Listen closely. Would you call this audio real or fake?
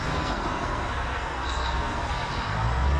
fake